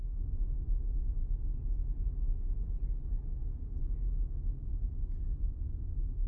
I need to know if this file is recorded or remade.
recorded